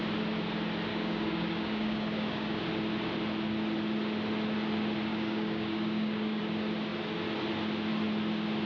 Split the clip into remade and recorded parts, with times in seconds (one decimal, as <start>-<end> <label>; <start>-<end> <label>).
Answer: 0.0-0.9 recorded; 0.9-2.6 remade; 2.6-5.1 recorded; 5.1-6.4 remade; 6.4-8.7 recorded